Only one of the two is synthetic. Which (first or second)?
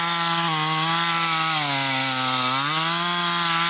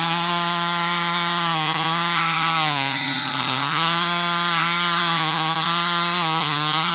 second